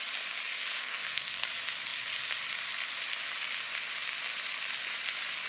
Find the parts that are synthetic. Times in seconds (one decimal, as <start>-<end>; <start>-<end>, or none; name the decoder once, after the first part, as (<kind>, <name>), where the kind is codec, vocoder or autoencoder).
0.8-1.5 (codec, SNAC)